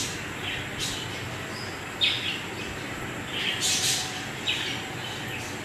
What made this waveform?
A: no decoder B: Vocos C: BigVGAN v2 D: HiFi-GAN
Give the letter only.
A